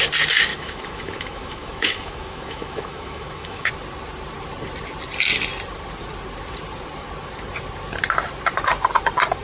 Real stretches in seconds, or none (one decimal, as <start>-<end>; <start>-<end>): 0.0-0.5; 3.7-9.4